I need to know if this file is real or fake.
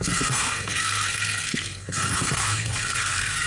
fake